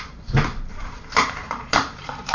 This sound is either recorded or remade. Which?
remade